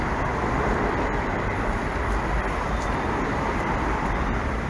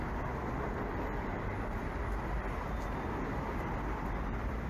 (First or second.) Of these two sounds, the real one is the second